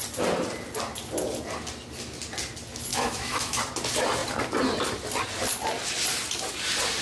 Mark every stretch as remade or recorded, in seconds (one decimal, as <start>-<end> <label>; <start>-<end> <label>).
0.0-2.9 recorded; 2.9-3.6 remade; 3.6-7.0 recorded